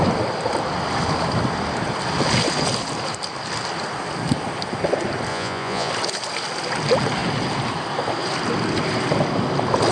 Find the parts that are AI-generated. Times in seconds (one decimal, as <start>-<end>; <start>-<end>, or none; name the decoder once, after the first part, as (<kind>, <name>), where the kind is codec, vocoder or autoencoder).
5.3-5.9 (vocoder, Vocos)